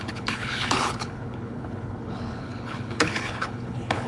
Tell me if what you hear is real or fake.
fake